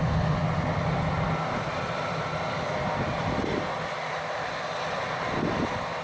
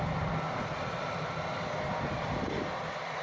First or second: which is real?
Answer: first